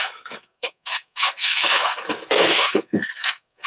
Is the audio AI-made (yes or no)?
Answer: yes